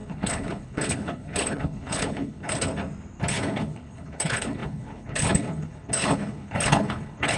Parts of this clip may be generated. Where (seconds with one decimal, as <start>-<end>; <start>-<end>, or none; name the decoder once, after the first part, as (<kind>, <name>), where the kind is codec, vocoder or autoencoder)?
0.0-2.7 (codec, HILCodec); 3.3-7.4